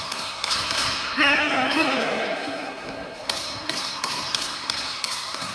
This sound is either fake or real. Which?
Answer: fake